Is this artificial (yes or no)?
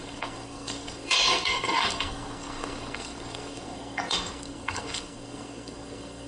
yes